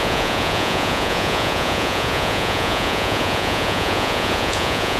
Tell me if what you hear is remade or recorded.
remade